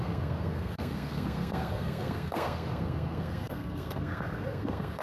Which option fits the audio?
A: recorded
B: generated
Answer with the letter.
B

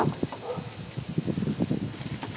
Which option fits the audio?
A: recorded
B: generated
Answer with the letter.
A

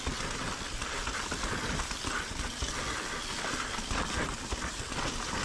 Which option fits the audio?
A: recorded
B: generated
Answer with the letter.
A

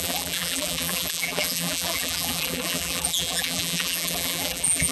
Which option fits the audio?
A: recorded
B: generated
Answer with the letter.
B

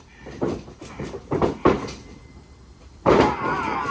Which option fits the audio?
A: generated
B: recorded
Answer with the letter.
A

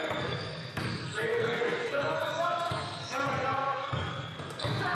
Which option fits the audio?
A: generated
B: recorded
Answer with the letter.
A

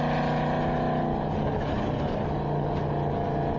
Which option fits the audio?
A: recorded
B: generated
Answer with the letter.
A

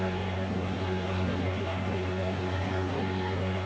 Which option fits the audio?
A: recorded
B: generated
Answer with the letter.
B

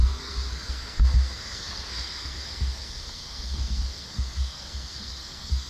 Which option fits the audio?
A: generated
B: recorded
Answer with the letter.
A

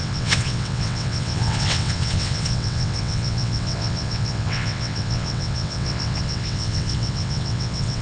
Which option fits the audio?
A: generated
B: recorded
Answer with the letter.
A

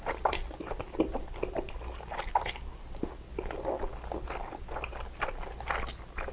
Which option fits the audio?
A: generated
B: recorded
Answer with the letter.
B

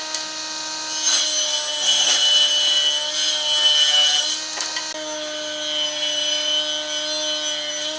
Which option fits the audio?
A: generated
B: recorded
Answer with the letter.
B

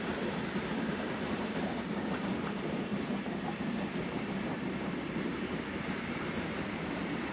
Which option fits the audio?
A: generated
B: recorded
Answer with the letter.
A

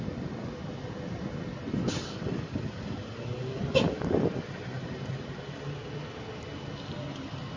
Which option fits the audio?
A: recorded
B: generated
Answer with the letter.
A